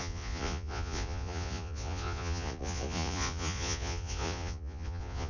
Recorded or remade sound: remade